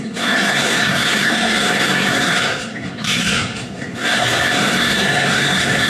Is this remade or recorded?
remade